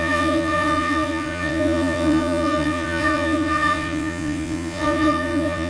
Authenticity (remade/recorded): remade